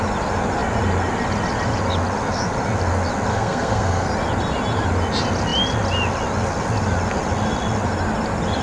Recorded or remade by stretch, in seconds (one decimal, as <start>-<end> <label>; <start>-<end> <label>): 0.0-3.3 recorded; 3.3-4.1 remade; 4.1-8.6 recorded